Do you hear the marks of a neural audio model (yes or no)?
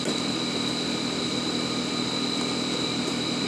no